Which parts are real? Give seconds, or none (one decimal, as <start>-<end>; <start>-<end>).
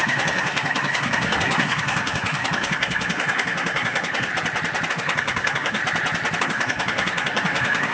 4.3-4.9; 5.8-6.4